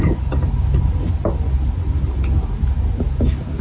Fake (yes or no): no